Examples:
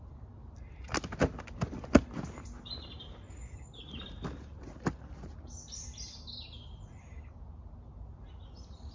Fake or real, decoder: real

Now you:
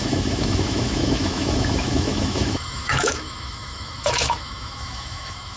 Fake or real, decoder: fake, autoencoder, DAC-VAE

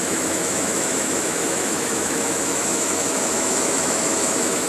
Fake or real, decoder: fake, autoencoder, DAC-VAE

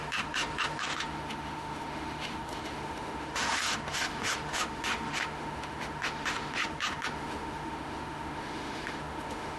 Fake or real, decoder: fake, autoencoder, DAC-VAE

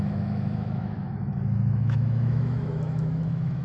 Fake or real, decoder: fake, autoencoder, DAC-VAE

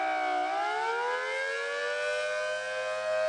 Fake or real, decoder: real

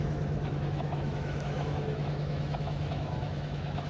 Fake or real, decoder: fake, autoencoder, DAC-VAE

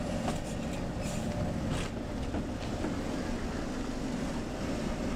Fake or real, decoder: real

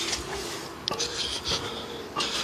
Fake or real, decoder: real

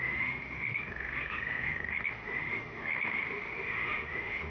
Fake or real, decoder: fake, autoencoder, DAC-VAE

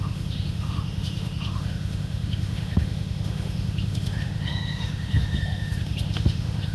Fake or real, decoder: fake, autoencoder, DAC-VAE